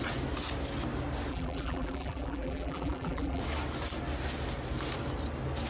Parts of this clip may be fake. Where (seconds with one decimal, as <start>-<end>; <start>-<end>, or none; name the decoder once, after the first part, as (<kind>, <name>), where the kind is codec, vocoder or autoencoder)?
1.3-3.4 (vocoder, BigVGAN v2)